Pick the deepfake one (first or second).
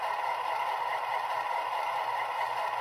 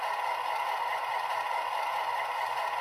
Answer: first